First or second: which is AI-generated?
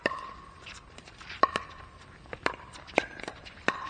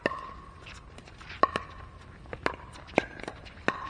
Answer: first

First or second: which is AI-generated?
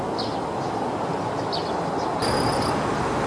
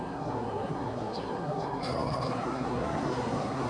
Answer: second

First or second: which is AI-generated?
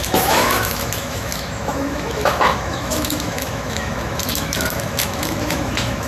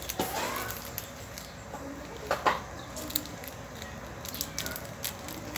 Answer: first